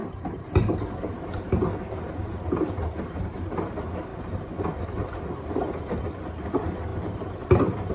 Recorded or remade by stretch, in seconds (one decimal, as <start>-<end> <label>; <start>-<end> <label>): 0.0-0.9 remade; 0.9-2.8 recorded; 2.8-3.5 remade; 3.5-7.9 recorded